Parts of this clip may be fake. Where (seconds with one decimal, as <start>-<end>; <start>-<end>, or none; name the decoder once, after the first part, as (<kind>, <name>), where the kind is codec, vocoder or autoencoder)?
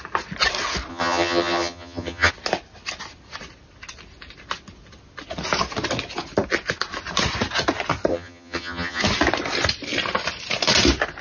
0.9-2.3 (vocoder, HiFi-GAN); 8.1-9.0